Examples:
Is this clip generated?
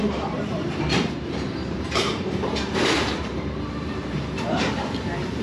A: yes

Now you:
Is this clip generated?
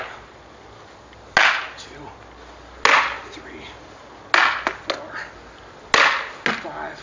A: no